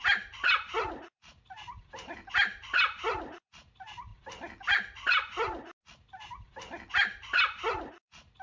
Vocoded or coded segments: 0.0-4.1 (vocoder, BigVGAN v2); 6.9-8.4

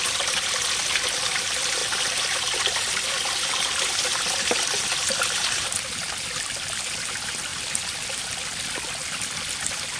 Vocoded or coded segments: 1.8-3.5 (vocoder, BigVGAN v2); 7.5-8.2

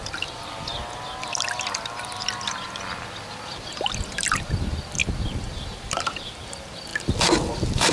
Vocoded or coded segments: 0.0-7.9 (vocoder, BigVGAN v2)

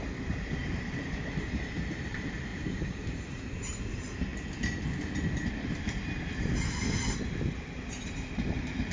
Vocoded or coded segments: 0.0-4.3 (vocoder, BigVGAN v2); 7.3-8.9

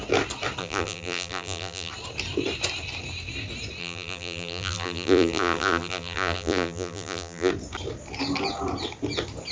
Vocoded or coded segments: 0.6-1.9 (vocoder, BigVGAN v2); 3.8-7.5

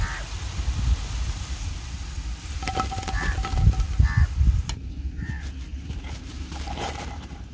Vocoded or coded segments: 5.7-7.5 (vocoder, BigVGAN v2)

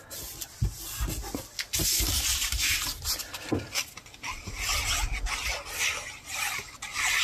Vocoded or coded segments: none